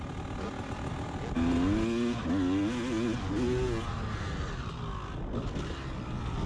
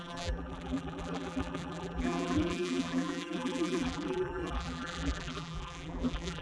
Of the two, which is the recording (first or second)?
first